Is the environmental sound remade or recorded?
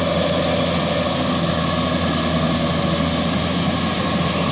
recorded